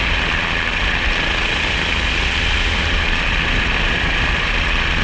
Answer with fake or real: real